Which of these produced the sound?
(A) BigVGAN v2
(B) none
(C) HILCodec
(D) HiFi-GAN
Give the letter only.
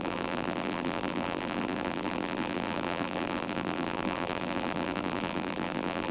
A